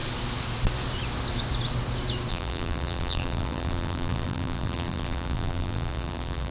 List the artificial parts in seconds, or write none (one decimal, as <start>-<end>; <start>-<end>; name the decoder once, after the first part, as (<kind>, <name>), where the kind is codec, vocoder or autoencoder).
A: 2.3-6.5 (vocoder, BigVGAN v2)